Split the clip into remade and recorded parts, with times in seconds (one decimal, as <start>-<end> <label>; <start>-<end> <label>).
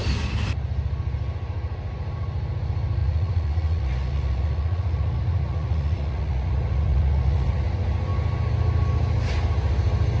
0.0-3.0 recorded; 3.0-7.6 remade; 7.6-10.2 recorded